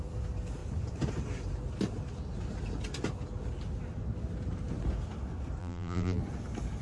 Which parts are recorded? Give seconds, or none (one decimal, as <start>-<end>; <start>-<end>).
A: 0.0-5.6; 6.2-6.8